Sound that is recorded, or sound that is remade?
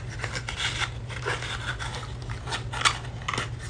recorded